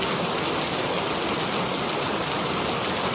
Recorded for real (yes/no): yes